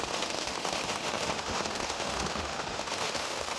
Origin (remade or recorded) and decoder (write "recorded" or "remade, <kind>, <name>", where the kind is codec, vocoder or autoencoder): remade, autoencoder, DAC-VAE